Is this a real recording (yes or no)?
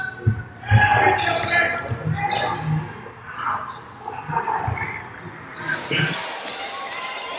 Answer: yes